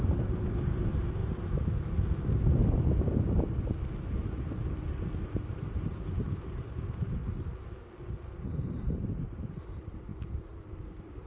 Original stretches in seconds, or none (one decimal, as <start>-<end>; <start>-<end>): 1.2-5.2; 7.2-8.2

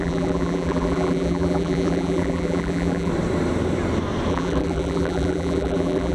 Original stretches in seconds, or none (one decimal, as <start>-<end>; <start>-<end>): 3.1-4.3

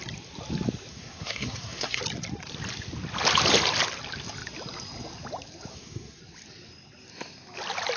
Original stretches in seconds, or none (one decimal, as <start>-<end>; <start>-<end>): 0.0-0.9; 2.0-5.7; 6.2-8.0

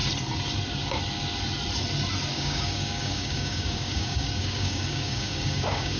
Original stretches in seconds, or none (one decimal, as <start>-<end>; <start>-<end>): 0.0-2.3